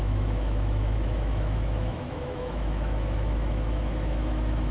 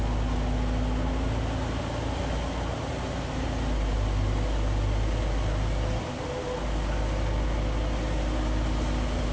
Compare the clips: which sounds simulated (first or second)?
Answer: first